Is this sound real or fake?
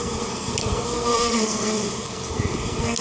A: fake